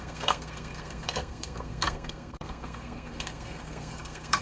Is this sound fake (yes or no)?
yes